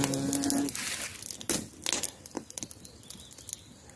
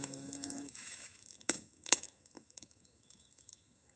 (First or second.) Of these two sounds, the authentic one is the first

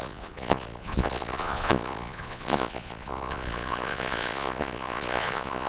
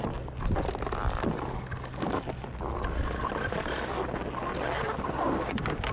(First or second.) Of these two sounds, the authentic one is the second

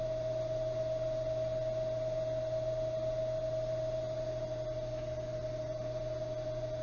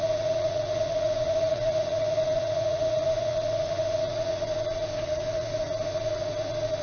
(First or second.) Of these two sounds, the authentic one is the first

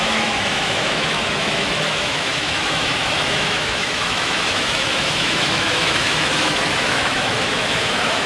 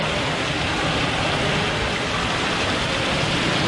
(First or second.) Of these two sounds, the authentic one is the second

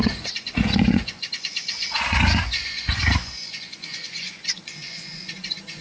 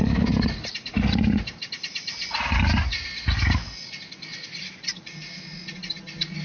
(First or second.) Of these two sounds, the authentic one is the second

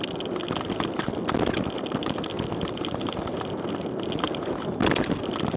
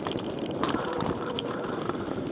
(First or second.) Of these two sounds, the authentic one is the first